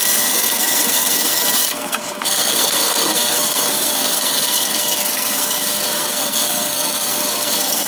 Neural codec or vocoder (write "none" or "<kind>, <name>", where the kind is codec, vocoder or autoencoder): codec, SNAC